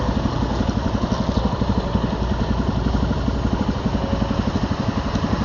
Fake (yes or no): no